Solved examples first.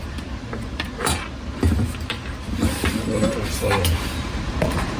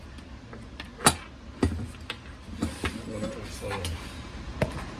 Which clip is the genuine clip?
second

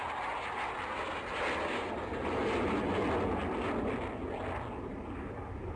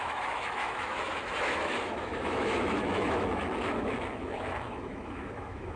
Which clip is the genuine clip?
first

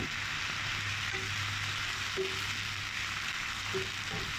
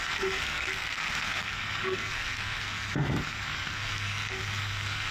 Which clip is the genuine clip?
first